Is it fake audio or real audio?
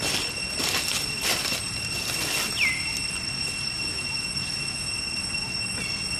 real